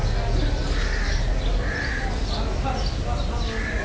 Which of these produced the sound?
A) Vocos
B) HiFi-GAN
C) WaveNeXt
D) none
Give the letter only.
D